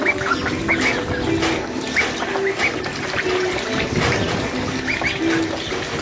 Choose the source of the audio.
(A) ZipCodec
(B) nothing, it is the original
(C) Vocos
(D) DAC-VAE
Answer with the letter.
B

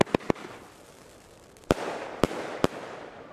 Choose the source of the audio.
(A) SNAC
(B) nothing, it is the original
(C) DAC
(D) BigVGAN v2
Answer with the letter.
B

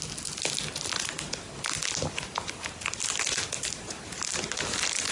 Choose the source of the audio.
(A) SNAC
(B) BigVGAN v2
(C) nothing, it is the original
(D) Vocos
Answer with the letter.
C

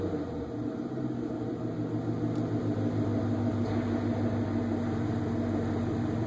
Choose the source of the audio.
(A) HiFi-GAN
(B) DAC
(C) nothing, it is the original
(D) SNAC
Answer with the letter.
C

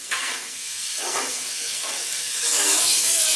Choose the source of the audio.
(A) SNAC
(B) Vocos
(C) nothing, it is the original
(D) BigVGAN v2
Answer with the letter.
A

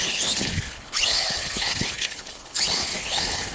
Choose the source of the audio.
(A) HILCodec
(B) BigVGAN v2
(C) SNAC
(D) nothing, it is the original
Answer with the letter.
A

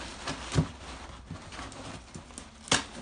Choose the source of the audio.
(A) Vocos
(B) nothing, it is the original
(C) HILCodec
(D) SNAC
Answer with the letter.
B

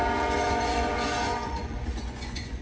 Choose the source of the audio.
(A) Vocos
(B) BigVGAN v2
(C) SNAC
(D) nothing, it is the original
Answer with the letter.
A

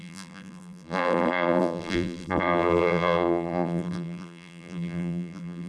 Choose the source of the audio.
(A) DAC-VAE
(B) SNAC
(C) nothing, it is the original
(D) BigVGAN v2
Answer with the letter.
D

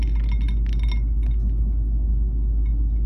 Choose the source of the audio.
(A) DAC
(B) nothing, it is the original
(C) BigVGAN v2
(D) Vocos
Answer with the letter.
B